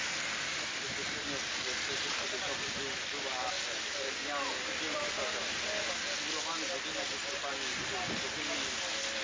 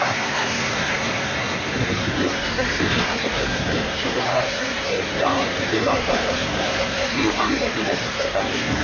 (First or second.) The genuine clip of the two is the first